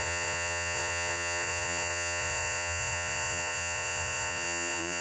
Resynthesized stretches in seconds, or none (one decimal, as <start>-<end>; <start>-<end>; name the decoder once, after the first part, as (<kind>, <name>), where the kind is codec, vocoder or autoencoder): 0.0-5.0 (vocoder, Vocos)